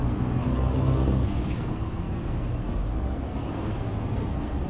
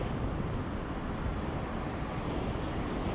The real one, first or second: second